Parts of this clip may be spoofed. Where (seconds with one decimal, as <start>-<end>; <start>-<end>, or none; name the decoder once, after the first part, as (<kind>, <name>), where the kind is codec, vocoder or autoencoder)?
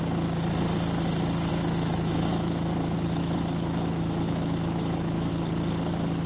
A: 1.5-5.3 (autoencoder, DAC-VAE)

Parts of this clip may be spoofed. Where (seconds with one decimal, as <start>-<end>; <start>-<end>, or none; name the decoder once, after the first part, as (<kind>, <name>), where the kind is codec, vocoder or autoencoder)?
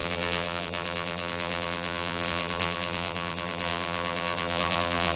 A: 0.0-5.2 (vocoder, BigVGAN v2)